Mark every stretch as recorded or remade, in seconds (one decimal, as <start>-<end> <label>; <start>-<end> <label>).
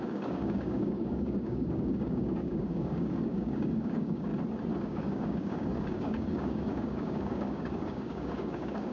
0.0-4.3 remade; 4.3-4.8 recorded; 4.8-8.9 remade